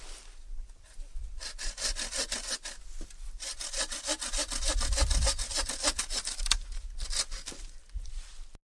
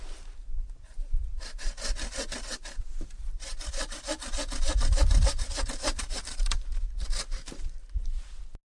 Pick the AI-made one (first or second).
second